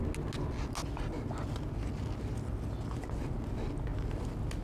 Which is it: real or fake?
real